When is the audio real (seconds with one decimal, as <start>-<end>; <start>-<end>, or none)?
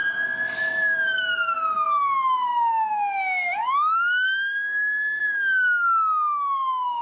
0.0-0.6